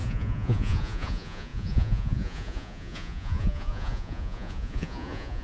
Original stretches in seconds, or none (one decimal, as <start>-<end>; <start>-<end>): none